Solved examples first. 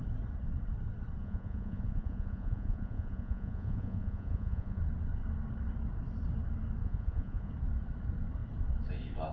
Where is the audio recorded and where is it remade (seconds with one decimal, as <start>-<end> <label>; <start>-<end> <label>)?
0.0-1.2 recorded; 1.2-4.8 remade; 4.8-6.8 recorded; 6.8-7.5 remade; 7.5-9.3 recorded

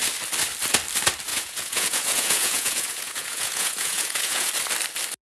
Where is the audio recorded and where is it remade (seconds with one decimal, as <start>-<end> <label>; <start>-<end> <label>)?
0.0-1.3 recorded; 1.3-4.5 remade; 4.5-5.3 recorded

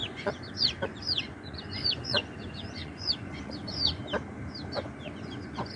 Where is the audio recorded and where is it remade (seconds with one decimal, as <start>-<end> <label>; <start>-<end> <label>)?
0.0-4.0 remade; 4.0-4.7 recorded; 4.7-5.8 remade

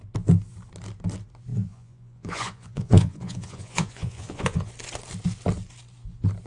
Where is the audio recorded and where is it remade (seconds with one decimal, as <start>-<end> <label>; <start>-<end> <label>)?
0.0-1.5 recorded; 1.5-4.7 remade; 4.7-6.5 recorded

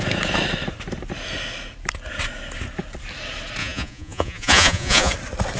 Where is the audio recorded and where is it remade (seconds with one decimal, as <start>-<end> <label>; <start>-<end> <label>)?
0.0-3.6 recorded; 3.6-5.1 remade; 5.1-5.6 recorded

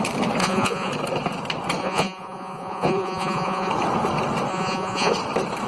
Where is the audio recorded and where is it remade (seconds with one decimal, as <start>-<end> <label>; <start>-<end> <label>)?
0.0-0.4 recorded; 0.4-0.9 remade; 0.9-1.8 recorded; 1.8-3.7 remade; 3.7-4.5 recorded; 4.5-5.1 remade; 5.1-5.7 recorded